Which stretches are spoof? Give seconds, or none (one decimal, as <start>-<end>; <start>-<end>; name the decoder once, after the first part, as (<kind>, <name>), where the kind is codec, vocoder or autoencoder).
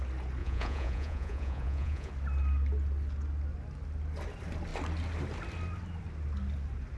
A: 0.4-2.1 (vocoder, Vocos)